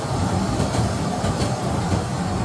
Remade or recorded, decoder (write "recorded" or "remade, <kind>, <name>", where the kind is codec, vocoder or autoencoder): recorded